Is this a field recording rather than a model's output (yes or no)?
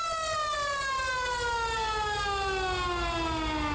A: yes